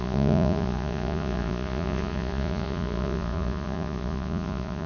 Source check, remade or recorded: remade